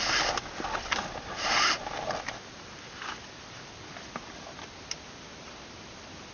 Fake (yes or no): no